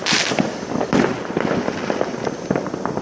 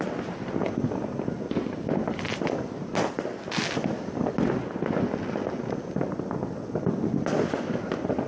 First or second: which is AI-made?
first